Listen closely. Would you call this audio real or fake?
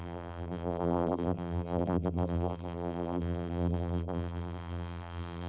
fake